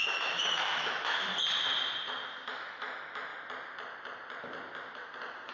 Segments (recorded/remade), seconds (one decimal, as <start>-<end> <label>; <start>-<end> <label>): 0.0-1.3 remade; 1.3-2.5 recorded; 2.5-3.3 remade; 3.3-5.5 recorded